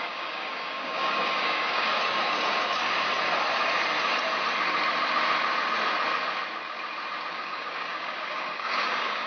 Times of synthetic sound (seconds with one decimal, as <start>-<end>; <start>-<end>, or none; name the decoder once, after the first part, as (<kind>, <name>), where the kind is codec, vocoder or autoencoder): 0.0-2.8 (codec, DAC); 7.3-9.3